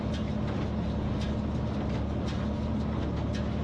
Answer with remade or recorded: recorded